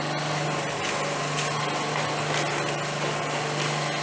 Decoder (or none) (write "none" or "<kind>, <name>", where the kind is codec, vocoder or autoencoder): none